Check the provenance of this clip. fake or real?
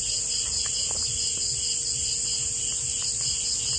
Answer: real